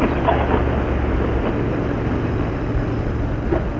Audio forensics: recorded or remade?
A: recorded